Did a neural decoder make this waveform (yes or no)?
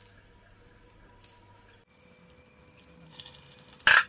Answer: no